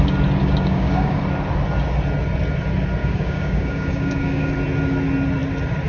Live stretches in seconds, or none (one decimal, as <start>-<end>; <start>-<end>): 0.0-0.4; 1.2-3.0; 4.5-5.9